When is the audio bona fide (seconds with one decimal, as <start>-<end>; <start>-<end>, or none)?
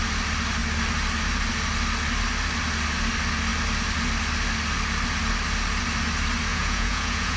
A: 0.0-6.5